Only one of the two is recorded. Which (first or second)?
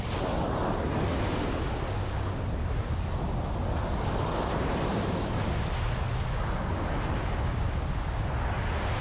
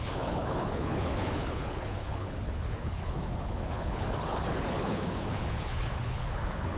first